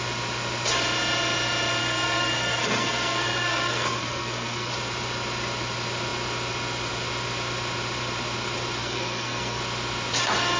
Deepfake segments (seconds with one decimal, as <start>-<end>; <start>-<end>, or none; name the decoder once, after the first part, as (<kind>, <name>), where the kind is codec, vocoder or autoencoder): 1.8-4.7 (codec, SNAC); 8.8-9.6